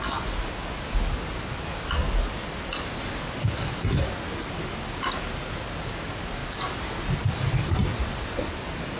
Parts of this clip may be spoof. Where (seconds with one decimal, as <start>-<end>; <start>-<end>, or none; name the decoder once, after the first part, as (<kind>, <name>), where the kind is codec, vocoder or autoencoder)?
none